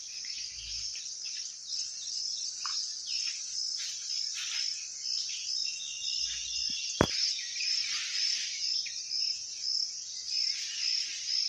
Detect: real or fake real